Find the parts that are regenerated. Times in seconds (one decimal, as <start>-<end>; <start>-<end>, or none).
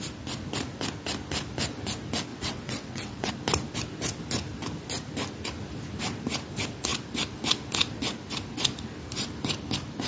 2.3-3.3